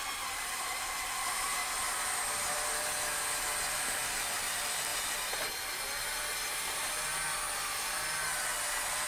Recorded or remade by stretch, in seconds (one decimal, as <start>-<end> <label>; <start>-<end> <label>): 0.0-1.6 remade; 1.6-3.7 recorded; 3.7-4.9 remade; 4.9-8.7 recorded; 8.7-9.1 remade